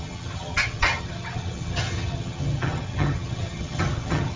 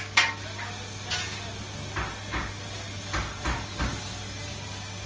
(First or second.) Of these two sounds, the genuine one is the second